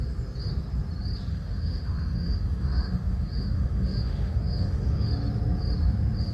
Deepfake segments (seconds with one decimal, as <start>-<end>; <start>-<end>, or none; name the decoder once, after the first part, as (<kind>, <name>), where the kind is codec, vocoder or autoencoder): 1.3-5.1 (autoencoder, DAC-VAE)